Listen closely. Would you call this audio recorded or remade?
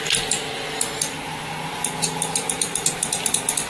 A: recorded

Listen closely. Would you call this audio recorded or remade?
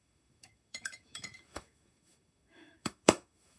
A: remade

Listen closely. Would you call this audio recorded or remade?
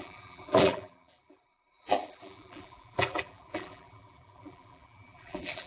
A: remade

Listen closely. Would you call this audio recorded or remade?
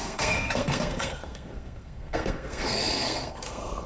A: remade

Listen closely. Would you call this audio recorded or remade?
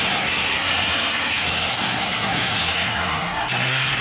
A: remade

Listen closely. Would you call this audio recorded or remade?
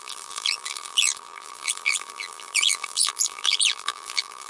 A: remade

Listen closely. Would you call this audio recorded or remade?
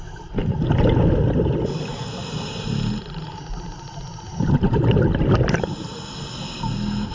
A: recorded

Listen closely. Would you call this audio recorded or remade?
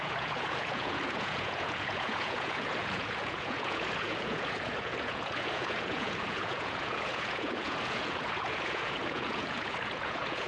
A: remade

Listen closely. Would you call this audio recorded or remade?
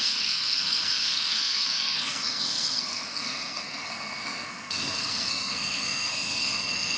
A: remade